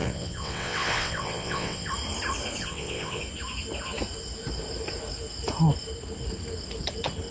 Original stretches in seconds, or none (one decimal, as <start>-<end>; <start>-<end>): 1.9-2.6; 3.2-7.3